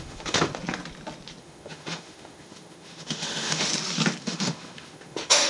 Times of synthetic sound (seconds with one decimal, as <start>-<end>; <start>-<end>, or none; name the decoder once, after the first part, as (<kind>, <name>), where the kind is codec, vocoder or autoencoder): 0.0-0.5 (autoencoder, DAC-VAE); 1.4-3.7; 4.2-5.5